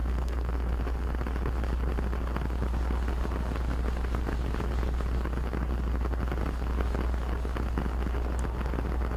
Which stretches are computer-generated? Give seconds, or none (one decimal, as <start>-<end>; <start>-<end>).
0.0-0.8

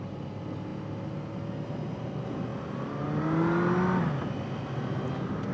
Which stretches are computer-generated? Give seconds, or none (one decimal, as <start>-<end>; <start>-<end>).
none

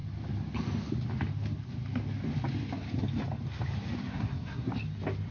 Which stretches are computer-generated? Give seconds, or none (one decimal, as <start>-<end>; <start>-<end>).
4.0-4.7

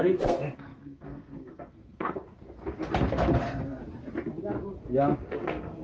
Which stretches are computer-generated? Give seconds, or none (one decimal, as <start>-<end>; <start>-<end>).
0.0-2.2; 3.1-3.8; 5.3-5.8

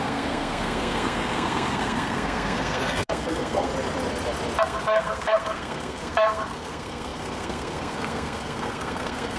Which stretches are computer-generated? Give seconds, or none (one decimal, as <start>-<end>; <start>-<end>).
0.0-3.7; 4.6-9.4

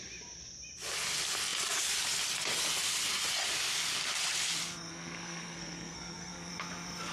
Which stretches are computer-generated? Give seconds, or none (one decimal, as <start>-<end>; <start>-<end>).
4.9-6.5

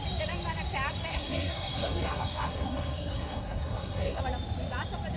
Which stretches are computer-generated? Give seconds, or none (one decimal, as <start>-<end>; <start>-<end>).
1.1-4.2